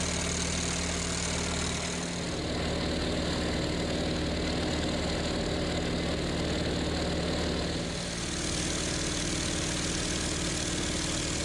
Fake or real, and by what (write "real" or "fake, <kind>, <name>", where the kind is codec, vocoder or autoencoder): real